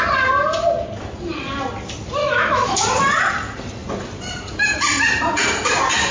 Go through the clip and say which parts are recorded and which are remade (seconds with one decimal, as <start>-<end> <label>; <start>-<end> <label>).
0.0-2.2 recorded; 2.2-2.8 remade; 2.8-6.1 recorded